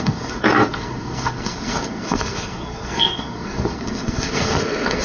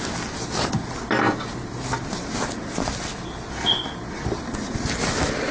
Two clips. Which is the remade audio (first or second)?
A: first